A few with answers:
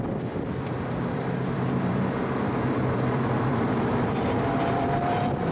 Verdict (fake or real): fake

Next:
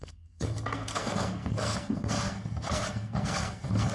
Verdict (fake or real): fake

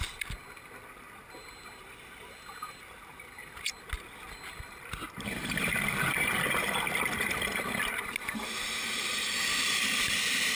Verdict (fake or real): real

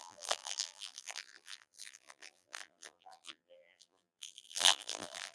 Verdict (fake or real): fake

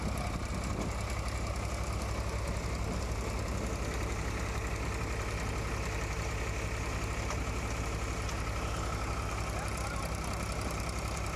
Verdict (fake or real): real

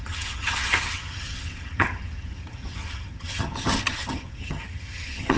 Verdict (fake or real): fake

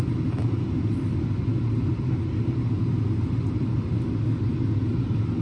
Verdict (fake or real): real